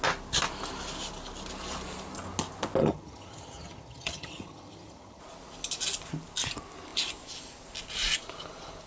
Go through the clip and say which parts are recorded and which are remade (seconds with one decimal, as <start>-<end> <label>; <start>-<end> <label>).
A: 0.0-2.8 recorded; 2.8-5.2 remade; 5.2-8.9 recorded